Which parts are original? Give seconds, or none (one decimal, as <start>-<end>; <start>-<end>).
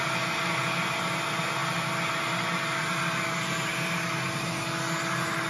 0.0-5.5